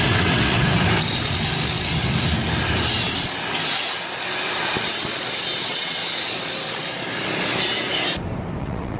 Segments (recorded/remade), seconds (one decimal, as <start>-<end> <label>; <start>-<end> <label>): 0.0-0.7 remade; 0.7-5.6 recorded; 5.6-6.0 remade; 6.0-8.6 recorded; 8.6-9.0 remade